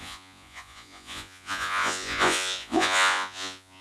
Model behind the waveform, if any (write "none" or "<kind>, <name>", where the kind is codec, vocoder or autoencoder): vocoder, Vocos